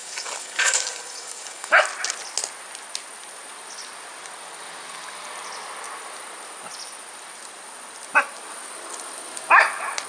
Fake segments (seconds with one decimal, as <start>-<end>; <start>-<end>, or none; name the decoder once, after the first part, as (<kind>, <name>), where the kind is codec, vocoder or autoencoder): 0.0-1.8 (codec, DAC)